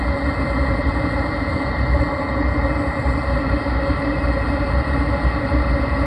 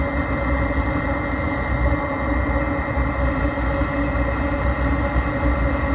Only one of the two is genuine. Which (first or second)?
second